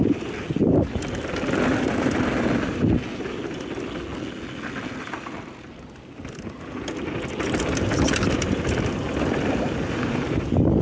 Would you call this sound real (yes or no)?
yes